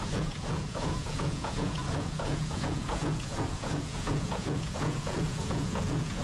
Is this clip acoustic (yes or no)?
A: no